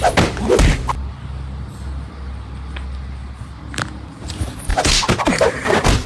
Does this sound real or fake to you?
real